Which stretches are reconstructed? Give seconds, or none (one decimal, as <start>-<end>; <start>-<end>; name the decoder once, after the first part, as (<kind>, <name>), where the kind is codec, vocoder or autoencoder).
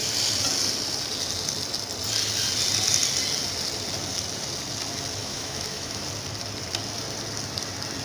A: 5.2-6.0 (autoencoder, DAC-VAE)